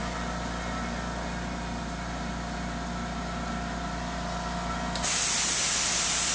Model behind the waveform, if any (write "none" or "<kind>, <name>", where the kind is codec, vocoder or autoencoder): none